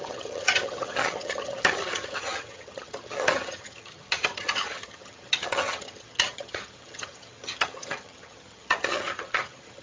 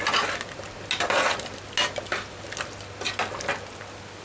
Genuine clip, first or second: second